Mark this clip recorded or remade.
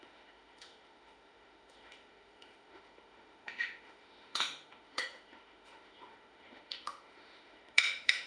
remade